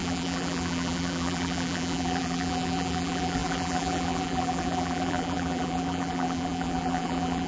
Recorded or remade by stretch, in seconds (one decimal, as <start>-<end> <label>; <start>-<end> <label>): 0.0-7.5 remade